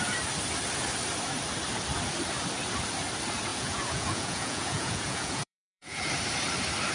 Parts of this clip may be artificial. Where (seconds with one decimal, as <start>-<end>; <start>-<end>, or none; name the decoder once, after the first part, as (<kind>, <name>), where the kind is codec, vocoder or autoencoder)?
3.5-6.1 (vocoder, Vocos)